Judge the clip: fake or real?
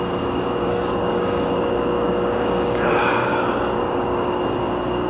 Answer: fake